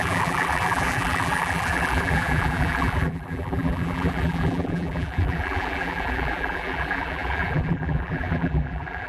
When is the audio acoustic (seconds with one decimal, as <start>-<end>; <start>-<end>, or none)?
none